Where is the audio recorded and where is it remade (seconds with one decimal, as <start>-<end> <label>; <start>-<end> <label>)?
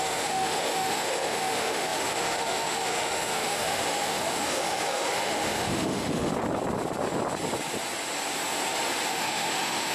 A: 0.0-6.3 remade; 6.3-9.1 recorded; 9.1-9.9 remade